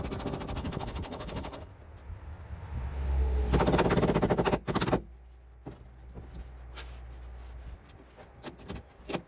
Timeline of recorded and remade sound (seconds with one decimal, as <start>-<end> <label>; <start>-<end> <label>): 0.0-0.6 recorded; 0.6-1.7 remade; 1.7-9.3 recorded